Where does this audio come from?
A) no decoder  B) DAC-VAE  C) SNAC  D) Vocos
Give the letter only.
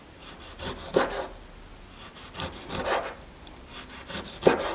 A